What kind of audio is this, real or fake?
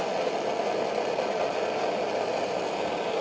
real